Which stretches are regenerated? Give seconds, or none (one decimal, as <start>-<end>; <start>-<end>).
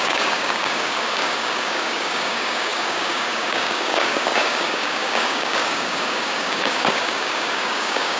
0.0-8.2